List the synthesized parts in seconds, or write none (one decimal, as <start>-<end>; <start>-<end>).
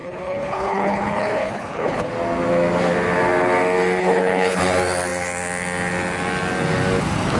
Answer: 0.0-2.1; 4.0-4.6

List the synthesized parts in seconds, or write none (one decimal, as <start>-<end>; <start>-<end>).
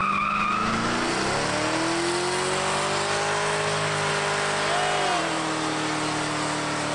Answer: none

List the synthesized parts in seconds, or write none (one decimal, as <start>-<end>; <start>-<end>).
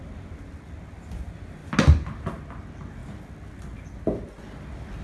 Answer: none